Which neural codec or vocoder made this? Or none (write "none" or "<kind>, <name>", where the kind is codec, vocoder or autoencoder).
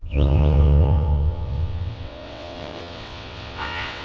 vocoder, WaveNeXt